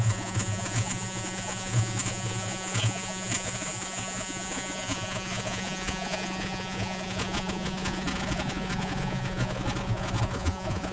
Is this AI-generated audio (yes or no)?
yes